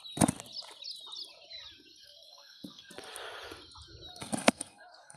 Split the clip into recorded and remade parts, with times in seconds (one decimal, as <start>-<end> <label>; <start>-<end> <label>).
0.0-2.0 recorded; 2.0-2.9 remade; 2.9-4.1 recorded; 4.1-5.2 remade

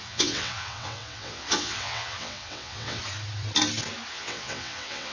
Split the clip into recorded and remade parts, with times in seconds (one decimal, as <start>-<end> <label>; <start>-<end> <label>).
0.0-3.0 remade; 3.0-4.1 recorded; 4.1-5.1 remade